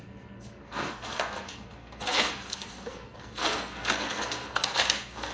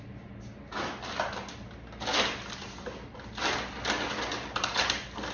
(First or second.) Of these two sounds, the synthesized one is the first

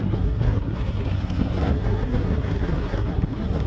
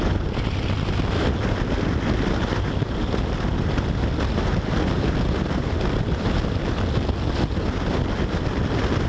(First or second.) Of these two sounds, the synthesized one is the first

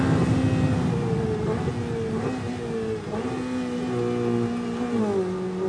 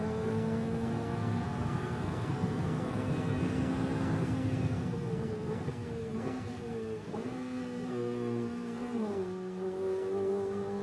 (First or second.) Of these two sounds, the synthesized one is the second